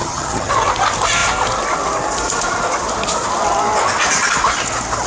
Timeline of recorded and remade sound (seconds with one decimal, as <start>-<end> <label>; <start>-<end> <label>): 0.0-0.5 remade; 0.5-5.1 recorded